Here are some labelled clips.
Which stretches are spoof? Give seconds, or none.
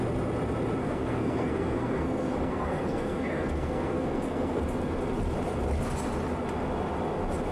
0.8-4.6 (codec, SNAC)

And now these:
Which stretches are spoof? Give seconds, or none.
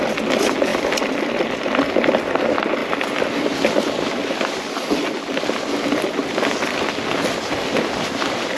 none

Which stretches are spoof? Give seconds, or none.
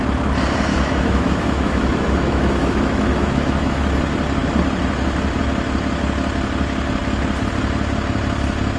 0.7-3.8 (autoencoder, DAC-VAE)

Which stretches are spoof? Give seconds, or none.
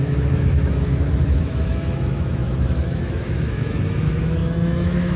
0.0-5.2 (autoencoder, DAC-VAE)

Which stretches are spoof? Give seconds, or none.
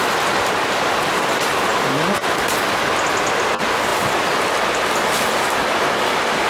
none